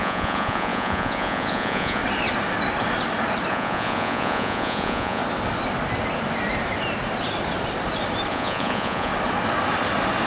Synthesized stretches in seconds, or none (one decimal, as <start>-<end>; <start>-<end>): 0.0-2.0; 3.5-5.2; 8.3-9.1